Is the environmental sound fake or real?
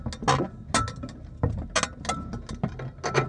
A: real